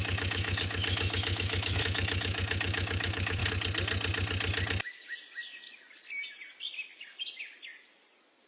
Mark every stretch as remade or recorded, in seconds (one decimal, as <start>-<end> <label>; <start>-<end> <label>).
0.0-3.4 remade; 3.4-8.5 recorded